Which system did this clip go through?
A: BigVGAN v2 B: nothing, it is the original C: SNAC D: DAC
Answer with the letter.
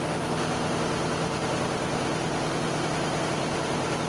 B